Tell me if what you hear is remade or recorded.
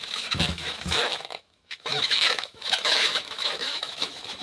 remade